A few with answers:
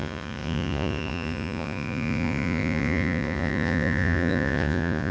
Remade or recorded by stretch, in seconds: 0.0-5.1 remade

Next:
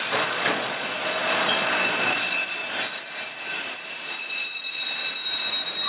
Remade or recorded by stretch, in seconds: 0.0-2.6 remade; 2.6-4.1 recorded; 4.1-5.0 remade; 5.0-5.9 recorded

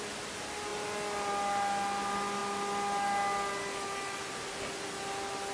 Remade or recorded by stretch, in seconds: 0.0-5.5 recorded

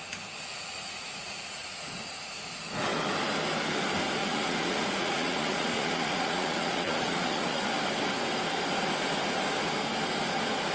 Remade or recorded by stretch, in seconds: 0.0-0.5 recorded; 0.5-2.6 remade; 2.6-4.2 recorded; 4.2-7.6 remade; 7.6-10.7 recorded

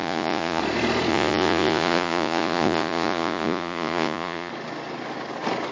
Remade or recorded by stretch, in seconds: 0.0-0.6 remade; 0.6-1.1 recorded; 1.1-4.5 remade; 4.5-5.7 recorded

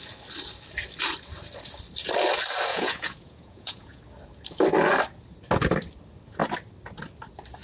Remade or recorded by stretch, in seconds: 0.0-2.7 recorded; 2.7-4.0 remade; 4.0-7.6 recorded

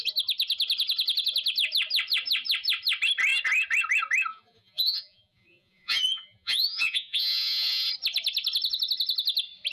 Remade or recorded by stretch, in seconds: 0.0-4.3 recorded; 4.3-7.9 remade; 7.9-9.7 recorded

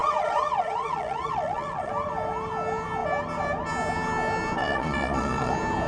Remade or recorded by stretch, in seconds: 0.0-1.9 remade; 1.9-4.6 recorded; 4.6-5.5 remade; 5.5-5.9 recorded